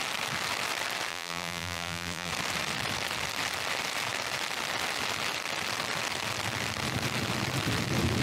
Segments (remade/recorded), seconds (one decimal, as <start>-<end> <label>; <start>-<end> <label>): 0.0-1.1 recorded; 1.1-2.3 remade; 2.3-8.2 recorded